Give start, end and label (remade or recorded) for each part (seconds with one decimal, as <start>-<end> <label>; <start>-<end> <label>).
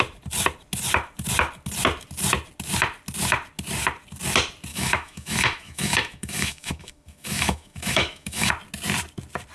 0.0-4.7 recorded; 4.7-8.5 remade; 8.5-9.5 recorded